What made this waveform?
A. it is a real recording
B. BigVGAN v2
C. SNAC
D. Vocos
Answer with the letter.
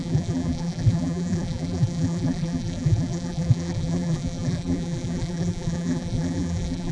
B